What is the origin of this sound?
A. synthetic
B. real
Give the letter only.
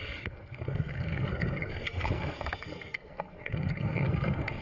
A